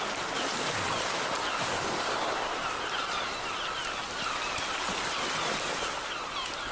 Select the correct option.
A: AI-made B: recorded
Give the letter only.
B